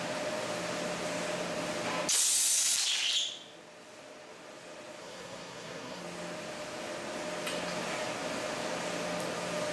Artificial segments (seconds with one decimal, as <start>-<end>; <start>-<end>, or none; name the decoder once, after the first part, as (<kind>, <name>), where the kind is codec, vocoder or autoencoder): 5.0-6.0 (codec, SNAC)